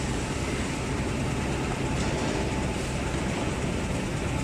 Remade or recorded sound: remade